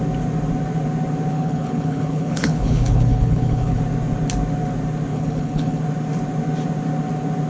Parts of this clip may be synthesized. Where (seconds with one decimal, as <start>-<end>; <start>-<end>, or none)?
1.3-3.8; 5.1-5.8